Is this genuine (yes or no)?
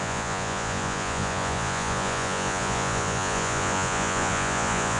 no